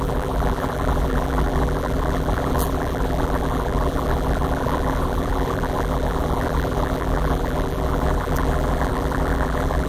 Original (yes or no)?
no